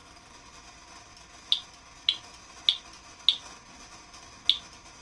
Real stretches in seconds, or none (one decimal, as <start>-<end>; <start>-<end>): 0.0-5.0